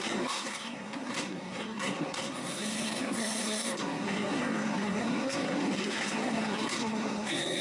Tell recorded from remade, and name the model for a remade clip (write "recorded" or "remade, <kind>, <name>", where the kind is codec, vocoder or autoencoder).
remade, codec, SNAC